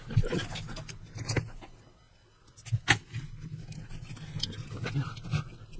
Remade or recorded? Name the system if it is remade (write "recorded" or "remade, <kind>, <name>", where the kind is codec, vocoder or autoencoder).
recorded